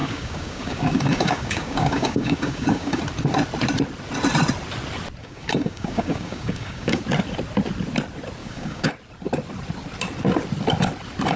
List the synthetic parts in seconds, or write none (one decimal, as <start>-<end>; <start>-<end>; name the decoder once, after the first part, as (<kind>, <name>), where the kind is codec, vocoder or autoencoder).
0.0-3.0 (codec, DAC); 5.2-7.0; 8.4-8.9